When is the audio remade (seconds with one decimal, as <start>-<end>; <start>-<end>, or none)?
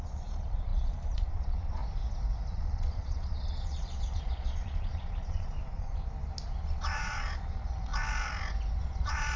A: 0.0-1.8; 2.5-6.0; 6.6-7.9; 8.8-9.4